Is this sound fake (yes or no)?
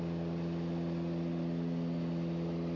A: no